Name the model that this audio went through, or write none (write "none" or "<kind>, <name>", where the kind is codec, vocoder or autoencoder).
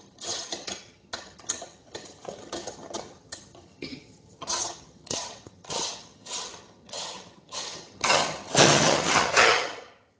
vocoder, HiFi-GAN